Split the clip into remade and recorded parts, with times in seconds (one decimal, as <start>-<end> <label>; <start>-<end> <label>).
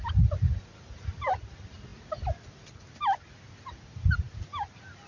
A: 0.0-5.1 recorded